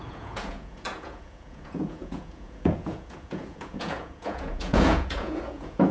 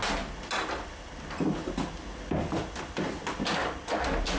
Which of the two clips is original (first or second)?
second